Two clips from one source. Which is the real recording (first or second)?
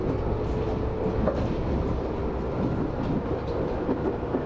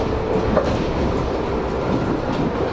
first